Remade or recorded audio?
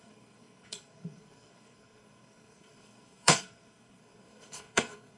remade